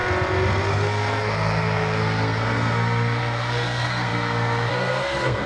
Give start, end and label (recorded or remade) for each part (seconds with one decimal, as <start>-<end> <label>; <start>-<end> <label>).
0.0-0.7 recorded; 0.7-5.5 remade